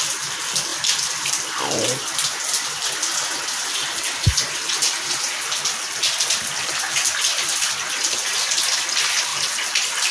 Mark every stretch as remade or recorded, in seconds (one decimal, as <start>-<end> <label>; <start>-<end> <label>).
0.0-0.7 recorded; 0.7-1.3 remade; 1.3-9.3 recorded; 9.3-10.1 remade